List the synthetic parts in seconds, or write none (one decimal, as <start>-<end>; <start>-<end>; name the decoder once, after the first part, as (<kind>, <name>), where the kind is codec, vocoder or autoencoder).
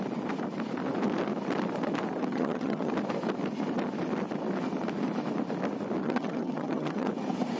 2.3-2.9 (vocoder, HiFi-GAN); 6.0-7.1